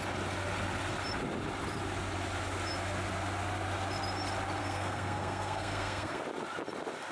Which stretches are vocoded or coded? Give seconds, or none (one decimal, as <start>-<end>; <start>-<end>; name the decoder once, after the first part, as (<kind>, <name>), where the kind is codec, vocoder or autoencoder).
4.6-6.2 (codec, SNAC)